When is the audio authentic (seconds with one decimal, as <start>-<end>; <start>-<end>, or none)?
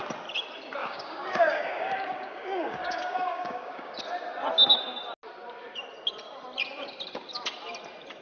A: 0.0-0.8; 4.0-8.2